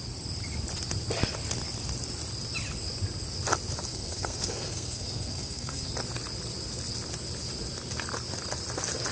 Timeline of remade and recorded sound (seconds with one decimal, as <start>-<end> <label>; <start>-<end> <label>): 0.0-3.9 recorded; 3.9-5.9 remade; 5.9-9.1 recorded